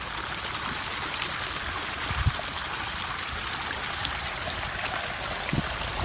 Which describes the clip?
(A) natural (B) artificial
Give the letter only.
A